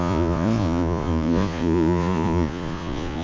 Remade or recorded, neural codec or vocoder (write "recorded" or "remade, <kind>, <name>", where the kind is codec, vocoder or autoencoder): remade, vocoder, Vocos